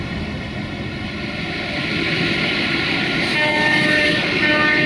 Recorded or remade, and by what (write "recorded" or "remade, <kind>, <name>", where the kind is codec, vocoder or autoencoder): recorded